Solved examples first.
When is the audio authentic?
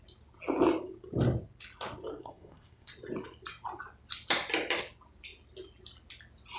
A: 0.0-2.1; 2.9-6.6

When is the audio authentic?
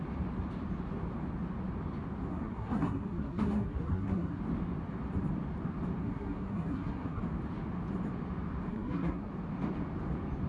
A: 0.0-2.3; 4.4-6.0; 7.2-8.7; 9.3-10.5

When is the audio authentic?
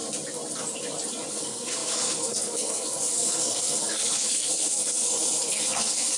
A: 0.0-1.3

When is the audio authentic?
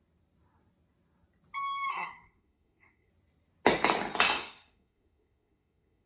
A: 0.0-1.9; 3.1-4.3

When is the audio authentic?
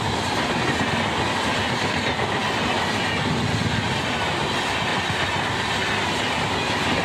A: 0.0-7.0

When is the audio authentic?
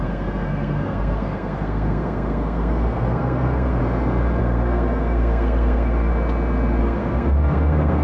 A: 3.8-4.4; 6.1-6.8